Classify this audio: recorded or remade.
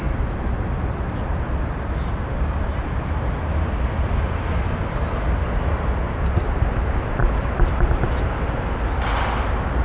recorded